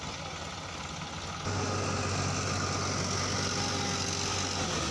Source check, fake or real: real